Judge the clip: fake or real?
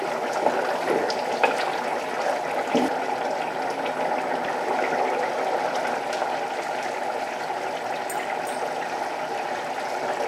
real